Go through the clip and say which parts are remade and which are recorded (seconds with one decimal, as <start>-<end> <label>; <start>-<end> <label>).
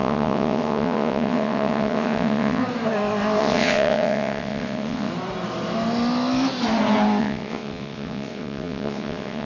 0.0-2.6 remade; 2.6-3.4 recorded; 3.4-5.1 remade; 5.1-7.2 recorded; 7.2-9.4 remade